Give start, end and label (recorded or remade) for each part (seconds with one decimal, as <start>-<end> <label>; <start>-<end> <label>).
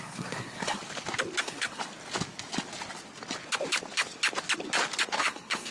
0.0-0.8 remade; 0.8-1.4 recorded; 1.4-1.8 remade; 1.8-5.2 recorded; 5.2-5.7 remade